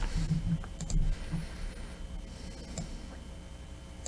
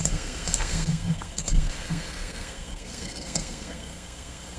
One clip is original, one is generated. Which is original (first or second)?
first